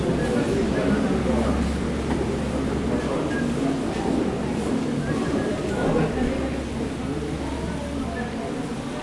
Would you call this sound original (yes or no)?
yes